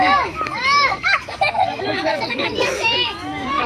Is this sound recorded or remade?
remade